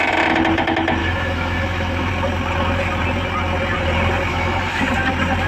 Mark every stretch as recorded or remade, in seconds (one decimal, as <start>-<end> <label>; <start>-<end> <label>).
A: 0.0-1.0 recorded; 1.0-2.1 remade; 2.1-4.3 recorded; 4.3-4.8 remade; 4.8-5.5 recorded